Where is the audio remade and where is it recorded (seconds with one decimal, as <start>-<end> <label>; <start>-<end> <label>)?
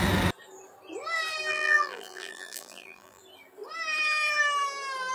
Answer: 0.0-1.5 recorded; 1.5-3.2 remade; 3.2-5.1 recorded